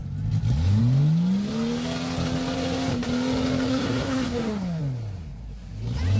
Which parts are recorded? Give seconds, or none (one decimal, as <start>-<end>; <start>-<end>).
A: 0.0-3.7; 4.8-6.2